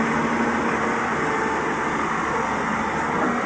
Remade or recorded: recorded